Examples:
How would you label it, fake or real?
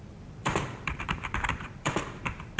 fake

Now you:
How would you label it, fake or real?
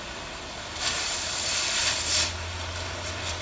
fake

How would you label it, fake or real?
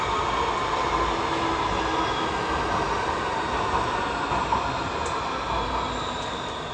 real